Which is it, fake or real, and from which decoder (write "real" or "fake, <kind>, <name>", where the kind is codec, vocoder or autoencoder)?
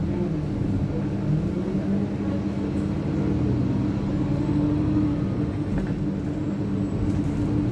real